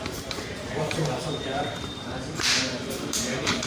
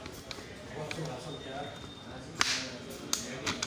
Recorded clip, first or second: second